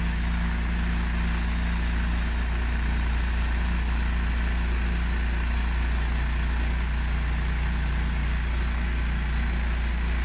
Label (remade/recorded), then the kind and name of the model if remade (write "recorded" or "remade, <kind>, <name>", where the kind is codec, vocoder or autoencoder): recorded